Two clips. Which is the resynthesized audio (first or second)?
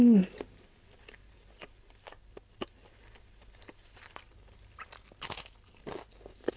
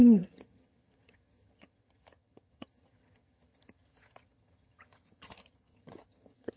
second